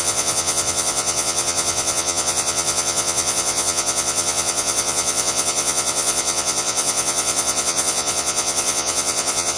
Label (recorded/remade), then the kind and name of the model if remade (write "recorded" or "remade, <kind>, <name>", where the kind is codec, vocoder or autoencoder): remade, vocoder, Vocos